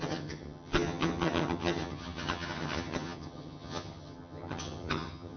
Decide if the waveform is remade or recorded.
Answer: remade